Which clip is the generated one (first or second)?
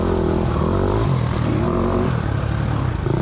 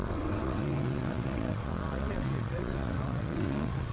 second